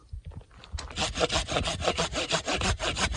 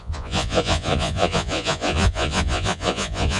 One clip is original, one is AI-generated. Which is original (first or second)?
first